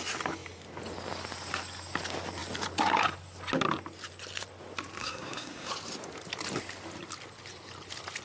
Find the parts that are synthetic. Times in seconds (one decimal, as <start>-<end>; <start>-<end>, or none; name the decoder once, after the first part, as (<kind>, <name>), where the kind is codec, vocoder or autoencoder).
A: 5.0-5.7 (codec, SNAC)